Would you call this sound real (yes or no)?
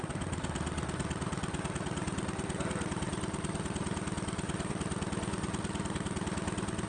yes